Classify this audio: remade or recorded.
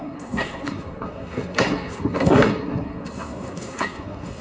remade